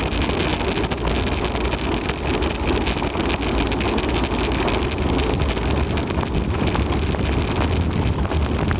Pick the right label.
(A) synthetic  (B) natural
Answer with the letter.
B